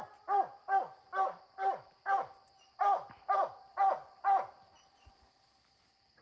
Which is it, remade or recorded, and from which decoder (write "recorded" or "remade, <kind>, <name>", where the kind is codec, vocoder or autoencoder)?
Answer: recorded